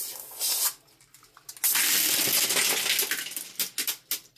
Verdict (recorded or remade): recorded